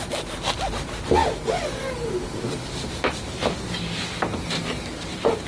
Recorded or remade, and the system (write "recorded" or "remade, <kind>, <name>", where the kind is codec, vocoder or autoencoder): recorded